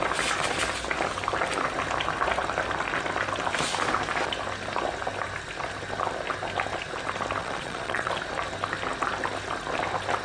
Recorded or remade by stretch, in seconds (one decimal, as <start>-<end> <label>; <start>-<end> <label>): 0.0-7.4 recorded; 7.4-8.1 remade; 8.1-10.2 recorded